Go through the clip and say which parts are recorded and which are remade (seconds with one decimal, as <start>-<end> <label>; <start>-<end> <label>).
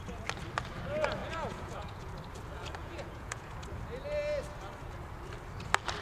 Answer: 0.0-1.2 recorded; 1.2-2.1 remade; 2.1-2.8 recorded; 2.8-3.5 remade; 3.5-6.0 recorded